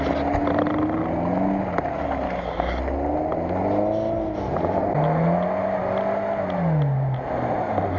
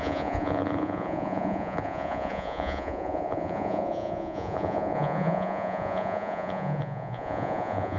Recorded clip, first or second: first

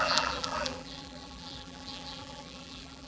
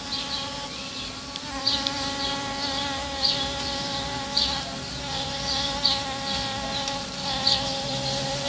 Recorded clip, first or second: second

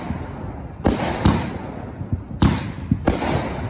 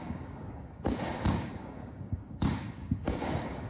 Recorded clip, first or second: first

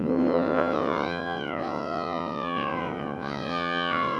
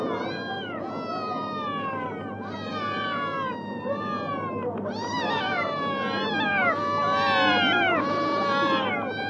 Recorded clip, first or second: second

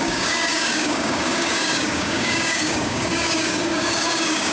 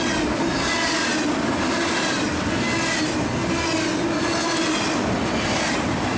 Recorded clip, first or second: second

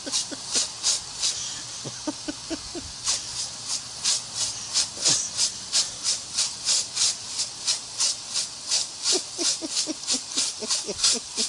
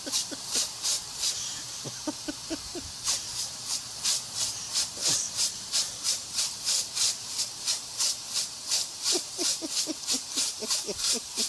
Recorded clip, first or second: first